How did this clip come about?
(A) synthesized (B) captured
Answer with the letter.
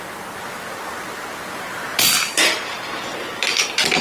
B